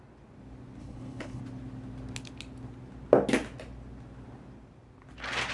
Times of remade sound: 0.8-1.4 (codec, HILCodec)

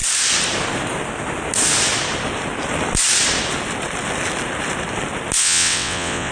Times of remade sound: 5.4-6.3 (vocoder, WaveNeXt)

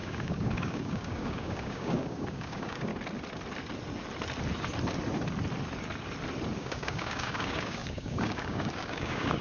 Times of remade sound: 0.0-2.9 (codec, DAC); 6.6-9.4

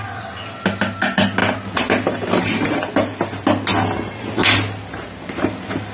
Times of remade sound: none

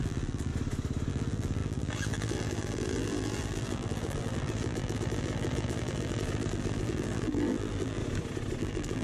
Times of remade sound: 0.0-0.5 (vocoder, BigVGAN v2); 1.1-8.0; 8.6-9.0

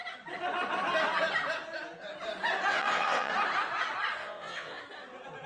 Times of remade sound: 2.7-3.3 (vocoder, WaveNeXt); 4.2-4.8

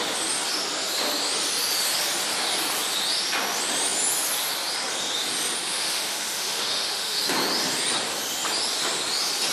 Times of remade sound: 5.7-7.2 (autoencoder, DAC-VAE)

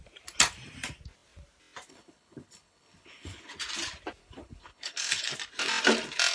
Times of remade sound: 1.9-3.5 (codec, HILCodec); 4.2-5.3